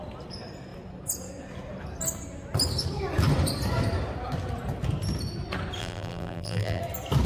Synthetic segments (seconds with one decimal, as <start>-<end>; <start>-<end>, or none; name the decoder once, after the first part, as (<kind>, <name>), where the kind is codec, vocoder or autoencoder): 5.8-6.8 (vocoder, BigVGAN v2)